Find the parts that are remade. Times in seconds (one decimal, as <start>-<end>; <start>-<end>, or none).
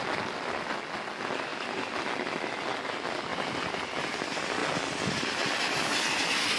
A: none